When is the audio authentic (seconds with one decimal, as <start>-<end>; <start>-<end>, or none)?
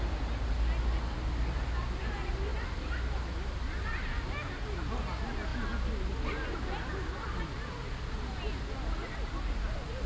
0.0-10.1